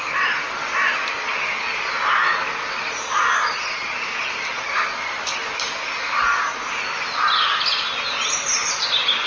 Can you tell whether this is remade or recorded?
recorded